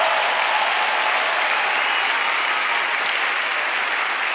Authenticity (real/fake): real